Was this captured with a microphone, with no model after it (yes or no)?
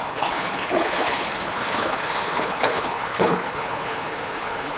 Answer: no